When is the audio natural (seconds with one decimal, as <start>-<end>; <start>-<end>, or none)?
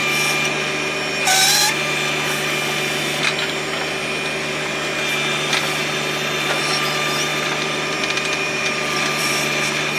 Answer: 0.0-7.3; 9.3-10.0